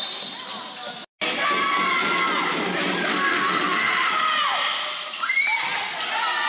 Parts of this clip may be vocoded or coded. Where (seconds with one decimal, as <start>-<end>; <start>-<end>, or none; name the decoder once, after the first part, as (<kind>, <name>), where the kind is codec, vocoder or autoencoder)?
3.1-4.1 (autoencoder, DAC-VAE)